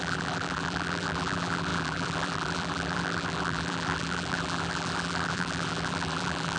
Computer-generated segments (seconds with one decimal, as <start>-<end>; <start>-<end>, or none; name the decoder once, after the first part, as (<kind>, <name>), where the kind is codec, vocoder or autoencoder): 0.0-6.6 (vocoder, BigVGAN v2)